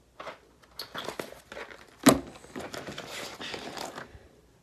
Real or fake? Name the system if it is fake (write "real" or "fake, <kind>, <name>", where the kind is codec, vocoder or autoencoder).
real